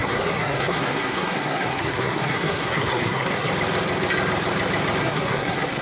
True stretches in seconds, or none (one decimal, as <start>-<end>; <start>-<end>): 3.5-5.0